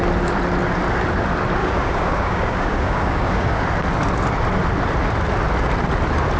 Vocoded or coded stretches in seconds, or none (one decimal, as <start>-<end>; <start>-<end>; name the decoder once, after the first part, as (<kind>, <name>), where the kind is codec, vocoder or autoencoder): 1.6-3.6 (codec, DAC)